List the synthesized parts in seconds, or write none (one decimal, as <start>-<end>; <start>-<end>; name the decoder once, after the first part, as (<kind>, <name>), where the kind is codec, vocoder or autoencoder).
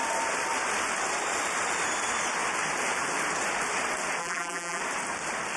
4.2-4.8 (vocoder, BigVGAN v2)